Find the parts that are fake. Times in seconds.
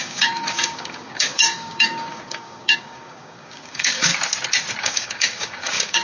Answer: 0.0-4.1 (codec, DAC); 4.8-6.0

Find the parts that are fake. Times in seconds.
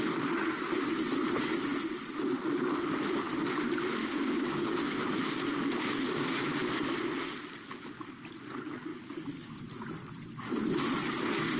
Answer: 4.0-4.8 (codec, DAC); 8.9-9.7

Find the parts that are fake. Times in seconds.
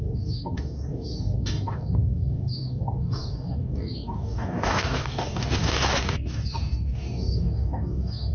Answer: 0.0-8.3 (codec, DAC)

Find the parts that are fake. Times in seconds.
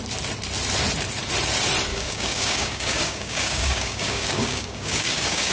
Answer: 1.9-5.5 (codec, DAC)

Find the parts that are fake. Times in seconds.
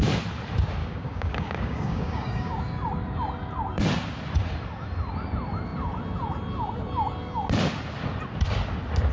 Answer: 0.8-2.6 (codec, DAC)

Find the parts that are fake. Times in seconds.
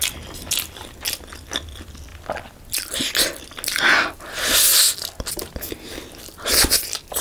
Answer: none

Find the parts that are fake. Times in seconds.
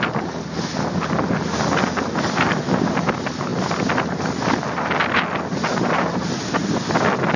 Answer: none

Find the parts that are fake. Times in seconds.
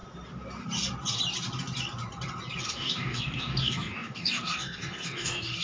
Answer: 2.6-5.6 (codec, DAC)